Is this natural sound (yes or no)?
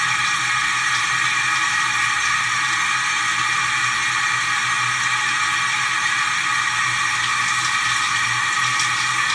yes